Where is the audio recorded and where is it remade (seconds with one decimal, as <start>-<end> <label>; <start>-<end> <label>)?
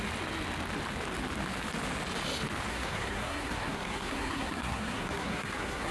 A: 0.0-2.7 recorded; 2.7-5.9 remade